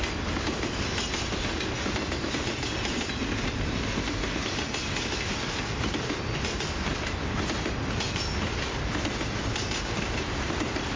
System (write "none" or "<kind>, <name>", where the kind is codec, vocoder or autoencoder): none